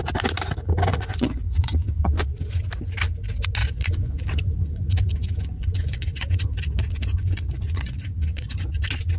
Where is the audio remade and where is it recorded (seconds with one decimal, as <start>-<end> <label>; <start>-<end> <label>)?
0.0-0.9 recorded; 0.9-2.1 remade; 2.1-3.6 recorded; 3.6-8.7 remade; 8.7-9.2 recorded